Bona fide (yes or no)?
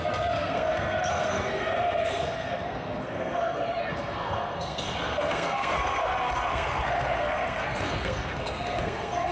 no